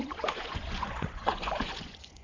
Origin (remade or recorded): remade